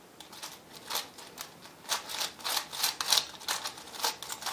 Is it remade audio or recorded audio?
recorded